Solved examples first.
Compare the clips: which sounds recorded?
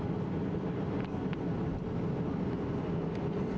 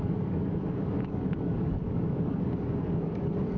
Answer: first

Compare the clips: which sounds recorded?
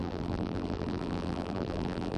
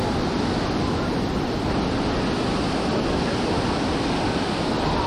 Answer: second